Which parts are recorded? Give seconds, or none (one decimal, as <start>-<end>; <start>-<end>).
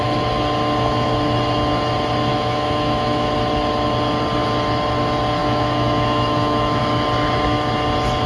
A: 0.0-2.3; 3.3-5.4; 6.8-8.3